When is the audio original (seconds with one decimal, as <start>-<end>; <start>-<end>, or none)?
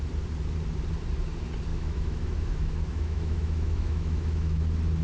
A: 0.0-1.7; 4.6-5.0